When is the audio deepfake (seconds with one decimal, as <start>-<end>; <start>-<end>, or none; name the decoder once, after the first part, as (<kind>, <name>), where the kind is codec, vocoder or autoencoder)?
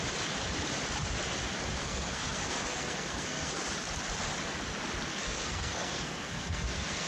1.8-3.6 (codec, SNAC); 5.1-7.1